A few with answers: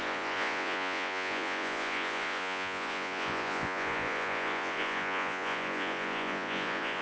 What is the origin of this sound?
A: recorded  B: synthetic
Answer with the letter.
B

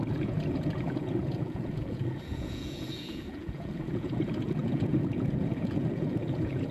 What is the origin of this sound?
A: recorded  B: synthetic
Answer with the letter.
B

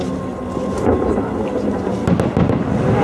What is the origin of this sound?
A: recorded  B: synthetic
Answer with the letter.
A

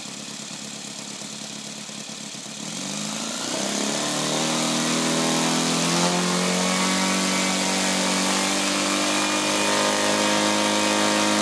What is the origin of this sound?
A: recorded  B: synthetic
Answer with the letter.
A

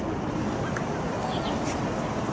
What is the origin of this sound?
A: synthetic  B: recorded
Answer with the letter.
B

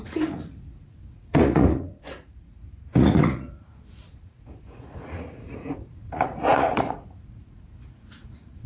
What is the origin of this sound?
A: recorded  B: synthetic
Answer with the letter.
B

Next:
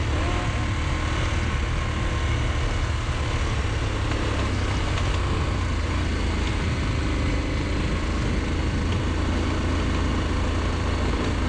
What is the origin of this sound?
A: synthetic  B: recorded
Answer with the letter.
B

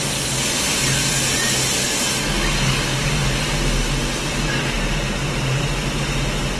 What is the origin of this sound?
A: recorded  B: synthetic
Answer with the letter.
A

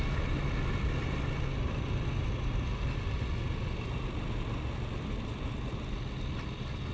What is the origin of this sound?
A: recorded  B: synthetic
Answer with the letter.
A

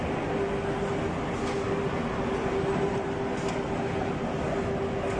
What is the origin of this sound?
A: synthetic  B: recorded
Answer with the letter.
B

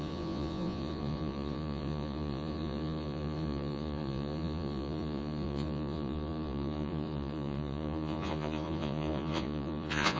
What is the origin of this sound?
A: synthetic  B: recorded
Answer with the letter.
A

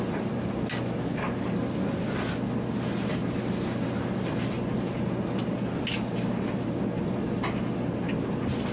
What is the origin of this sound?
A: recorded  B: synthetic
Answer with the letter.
A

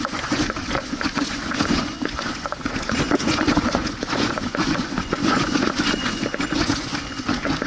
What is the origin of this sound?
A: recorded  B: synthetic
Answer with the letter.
B